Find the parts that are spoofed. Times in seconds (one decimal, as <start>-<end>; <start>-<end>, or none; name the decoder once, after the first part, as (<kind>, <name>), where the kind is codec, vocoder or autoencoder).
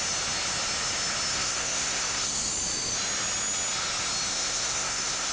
1.3-2.5 (codec, SNAC); 4.3-5.3